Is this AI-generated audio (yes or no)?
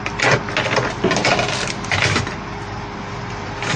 no